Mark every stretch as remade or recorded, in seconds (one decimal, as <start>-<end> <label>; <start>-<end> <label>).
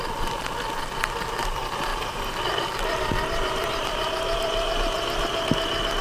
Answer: 0.0-1.9 recorded; 1.9-5.5 remade; 5.5-6.0 recorded